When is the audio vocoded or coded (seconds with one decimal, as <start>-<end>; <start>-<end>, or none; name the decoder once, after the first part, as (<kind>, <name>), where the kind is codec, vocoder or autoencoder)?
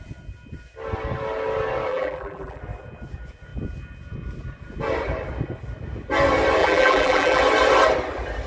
1.9-2.6 (vocoder, BigVGAN v2); 6.6-7.4